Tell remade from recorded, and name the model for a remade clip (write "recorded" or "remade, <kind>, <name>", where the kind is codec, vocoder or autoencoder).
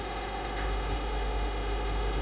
remade, autoencoder, DAC-VAE